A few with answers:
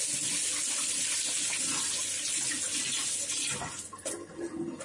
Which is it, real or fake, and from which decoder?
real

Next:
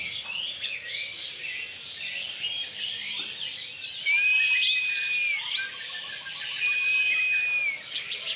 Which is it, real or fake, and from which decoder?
real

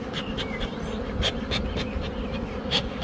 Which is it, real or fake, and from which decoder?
real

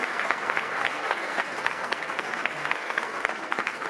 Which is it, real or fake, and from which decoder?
fake, codec, SNAC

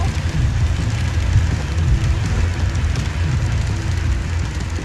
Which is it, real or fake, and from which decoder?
real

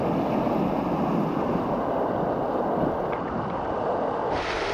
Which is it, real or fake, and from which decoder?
real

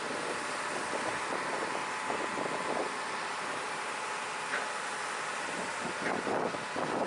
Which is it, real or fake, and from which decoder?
real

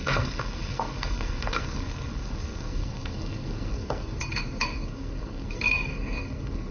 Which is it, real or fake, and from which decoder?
fake, codec, SNAC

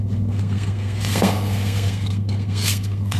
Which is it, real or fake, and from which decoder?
fake, codec, SNAC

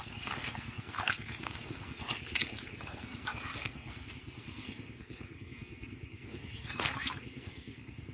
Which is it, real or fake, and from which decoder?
fake, codec, SNAC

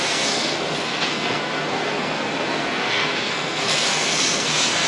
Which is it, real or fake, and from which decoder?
fake, codec, SNAC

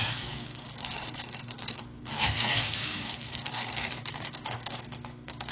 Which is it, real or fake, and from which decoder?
fake, codec, SNAC